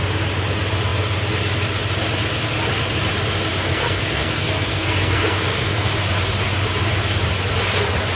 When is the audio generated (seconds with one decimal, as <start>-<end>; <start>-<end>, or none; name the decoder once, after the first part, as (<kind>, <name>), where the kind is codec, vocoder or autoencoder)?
3.7-5.9 (codec, SNAC)